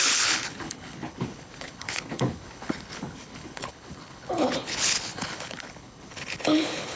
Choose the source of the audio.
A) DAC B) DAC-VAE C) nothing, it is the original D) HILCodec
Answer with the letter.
D